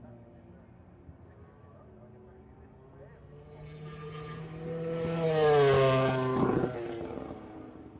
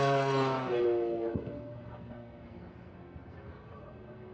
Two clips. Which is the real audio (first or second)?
first